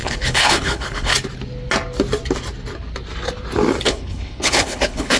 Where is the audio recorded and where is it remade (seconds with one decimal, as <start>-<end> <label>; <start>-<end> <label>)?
0.0-1.1 remade; 1.1-3.8 recorded; 3.8-5.2 remade